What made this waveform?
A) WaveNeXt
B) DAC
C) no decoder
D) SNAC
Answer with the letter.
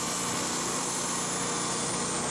C